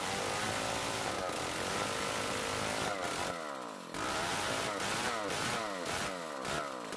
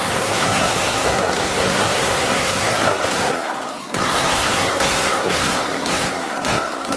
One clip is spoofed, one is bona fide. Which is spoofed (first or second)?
second